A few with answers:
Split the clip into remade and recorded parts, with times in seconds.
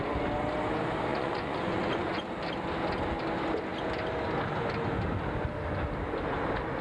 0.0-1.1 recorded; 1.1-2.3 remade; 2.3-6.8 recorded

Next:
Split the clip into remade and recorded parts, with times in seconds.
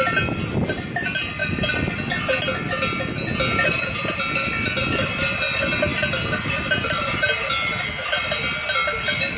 0.0-9.4 recorded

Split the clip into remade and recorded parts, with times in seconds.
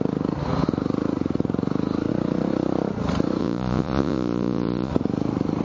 0.0-3.4 recorded; 3.4-4.9 remade; 4.9-5.6 recorded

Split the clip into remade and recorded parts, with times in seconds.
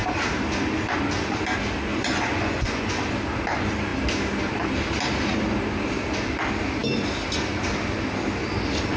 0.0-1.9 recorded; 1.9-2.9 remade; 2.9-9.0 recorded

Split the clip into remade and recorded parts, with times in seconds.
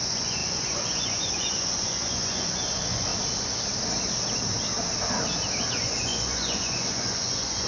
0.0-3.1 remade; 3.1-5.7 recorded; 5.7-7.7 remade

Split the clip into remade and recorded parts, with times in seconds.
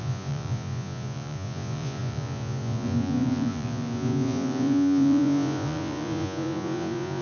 0.0-7.2 remade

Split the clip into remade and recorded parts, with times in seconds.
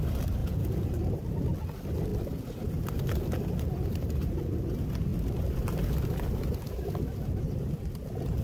0.0-0.4 recorded; 0.4-0.9 remade; 0.9-8.4 recorded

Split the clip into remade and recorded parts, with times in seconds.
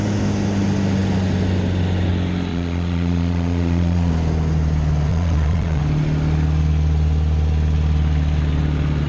0.0-2.5 recorded; 2.5-4.1 remade; 4.1-5.1 recorded; 5.1-5.8 remade; 5.8-9.1 recorded